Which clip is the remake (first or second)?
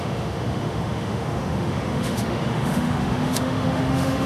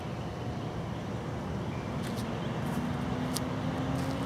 first